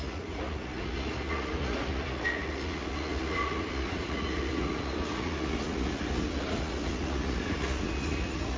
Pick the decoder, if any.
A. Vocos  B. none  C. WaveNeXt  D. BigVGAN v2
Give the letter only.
A